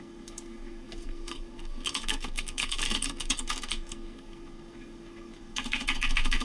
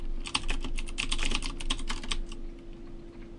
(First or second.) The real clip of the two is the second